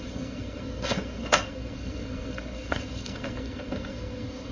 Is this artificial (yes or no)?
yes